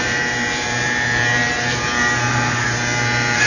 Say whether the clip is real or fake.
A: fake